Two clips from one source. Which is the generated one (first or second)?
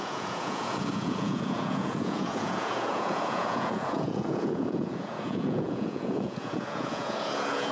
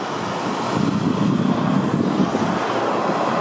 first